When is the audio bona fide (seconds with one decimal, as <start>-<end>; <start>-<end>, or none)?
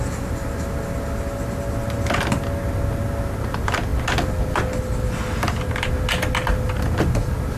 0.0-7.6